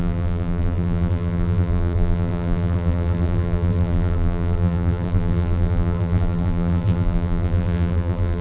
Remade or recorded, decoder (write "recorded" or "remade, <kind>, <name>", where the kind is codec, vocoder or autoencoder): remade, vocoder, BigVGAN v2